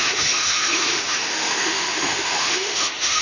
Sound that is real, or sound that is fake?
fake